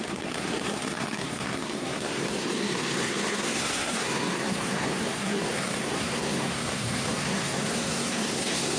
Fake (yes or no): yes